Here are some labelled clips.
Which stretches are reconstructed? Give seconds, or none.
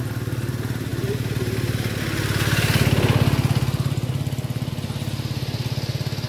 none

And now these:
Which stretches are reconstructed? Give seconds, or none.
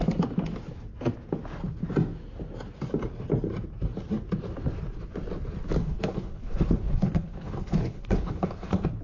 5.8-9.0 (codec, HILCodec)